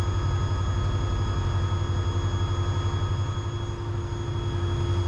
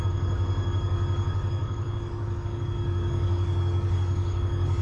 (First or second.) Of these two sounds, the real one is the first